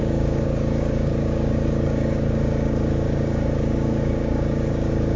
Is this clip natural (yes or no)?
no